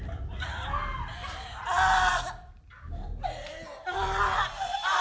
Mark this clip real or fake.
real